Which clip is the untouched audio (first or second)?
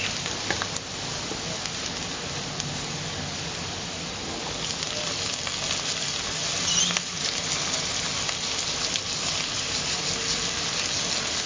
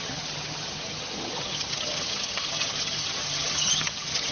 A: first